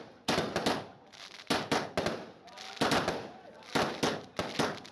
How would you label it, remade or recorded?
recorded